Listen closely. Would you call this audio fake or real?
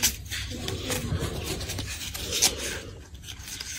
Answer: real